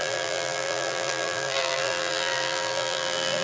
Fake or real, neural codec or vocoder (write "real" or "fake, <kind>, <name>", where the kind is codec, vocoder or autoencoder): fake, vocoder, BigVGAN v2